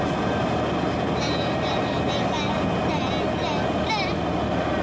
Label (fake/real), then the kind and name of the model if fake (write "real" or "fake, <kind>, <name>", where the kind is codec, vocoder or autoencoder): real